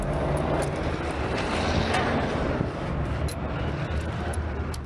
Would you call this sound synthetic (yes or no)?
no